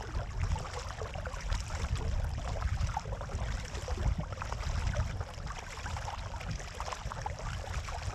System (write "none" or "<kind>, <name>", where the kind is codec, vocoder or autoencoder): none